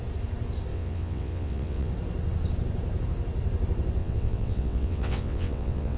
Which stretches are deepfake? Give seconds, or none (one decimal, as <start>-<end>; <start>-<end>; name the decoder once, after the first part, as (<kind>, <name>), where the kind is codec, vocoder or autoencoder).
0.7-1.9 (vocoder, WaveNeXt); 4.0-6.0